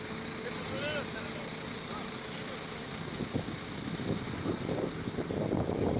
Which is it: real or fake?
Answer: real